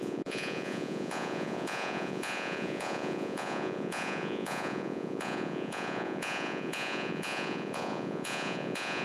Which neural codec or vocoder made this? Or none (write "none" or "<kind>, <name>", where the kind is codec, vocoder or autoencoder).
vocoder, Vocos